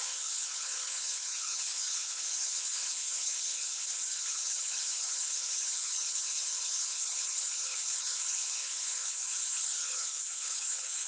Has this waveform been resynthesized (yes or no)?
yes